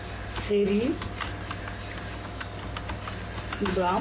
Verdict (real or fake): real